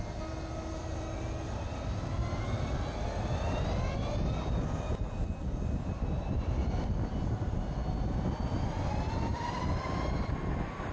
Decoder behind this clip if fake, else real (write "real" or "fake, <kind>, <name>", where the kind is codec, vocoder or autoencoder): real